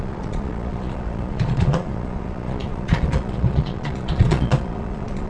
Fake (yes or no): yes